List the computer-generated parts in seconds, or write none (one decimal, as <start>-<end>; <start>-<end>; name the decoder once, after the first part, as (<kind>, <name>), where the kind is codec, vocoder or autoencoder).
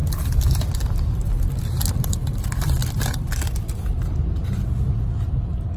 0.0-1.5 (vocoder, BigVGAN v2); 2.8-3.4